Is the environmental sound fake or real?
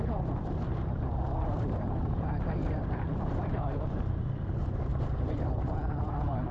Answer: fake